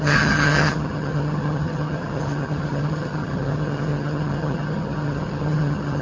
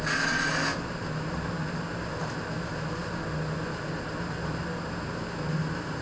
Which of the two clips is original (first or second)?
second